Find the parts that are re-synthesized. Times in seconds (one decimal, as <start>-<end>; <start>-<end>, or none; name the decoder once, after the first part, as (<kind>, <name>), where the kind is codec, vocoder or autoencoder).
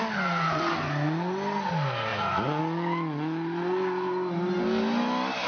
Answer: none